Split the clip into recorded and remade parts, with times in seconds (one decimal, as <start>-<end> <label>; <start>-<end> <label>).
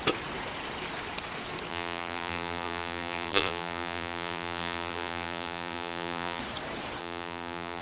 0.0-1.7 recorded; 1.7-6.4 remade; 6.4-7.0 recorded; 7.0-7.8 remade